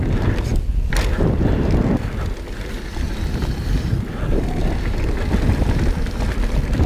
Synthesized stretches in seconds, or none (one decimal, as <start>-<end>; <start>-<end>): none